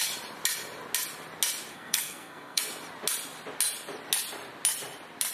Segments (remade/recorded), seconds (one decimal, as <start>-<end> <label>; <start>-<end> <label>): 0.0-1.7 recorded; 1.7-2.6 remade; 2.6-5.3 recorded